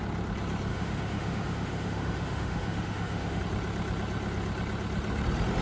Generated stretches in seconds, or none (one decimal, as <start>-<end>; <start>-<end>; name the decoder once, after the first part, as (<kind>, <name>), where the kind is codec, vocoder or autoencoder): 0.7-3.4 (autoencoder, DAC-VAE)